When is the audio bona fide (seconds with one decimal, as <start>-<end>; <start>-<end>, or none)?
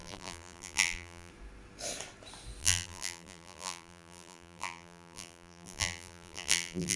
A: 1.3-2.6